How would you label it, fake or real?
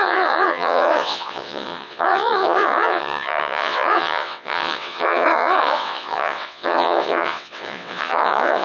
fake